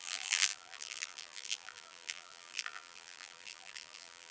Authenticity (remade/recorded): remade